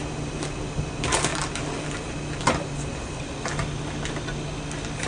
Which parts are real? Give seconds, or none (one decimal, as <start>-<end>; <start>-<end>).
0.0-5.1